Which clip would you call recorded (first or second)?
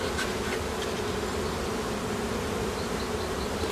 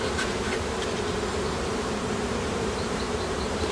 first